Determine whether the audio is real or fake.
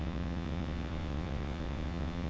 fake